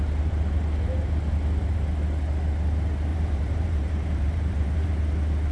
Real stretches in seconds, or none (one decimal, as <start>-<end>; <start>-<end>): 0.0-3.1; 5.0-5.5